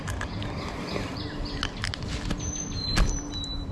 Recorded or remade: recorded